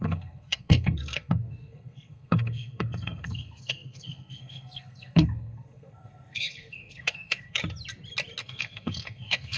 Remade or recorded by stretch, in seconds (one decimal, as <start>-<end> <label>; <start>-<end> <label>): 0.0-7.6 remade; 7.6-8.4 recorded; 8.4-9.6 remade